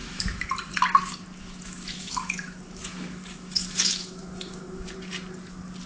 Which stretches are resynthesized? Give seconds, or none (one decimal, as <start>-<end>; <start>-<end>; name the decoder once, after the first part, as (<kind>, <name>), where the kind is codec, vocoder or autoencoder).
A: 0.0-0.5 (autoencoder, DAC-VAE); 1.4-4.9